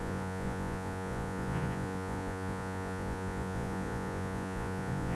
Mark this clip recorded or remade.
remade